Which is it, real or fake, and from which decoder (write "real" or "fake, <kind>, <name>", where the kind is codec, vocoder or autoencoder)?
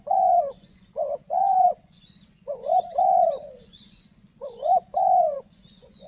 fake, vocoder, Vocos